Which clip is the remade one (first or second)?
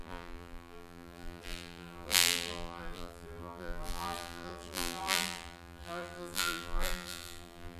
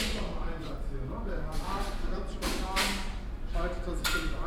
first